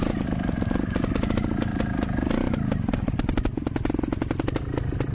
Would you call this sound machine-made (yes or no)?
no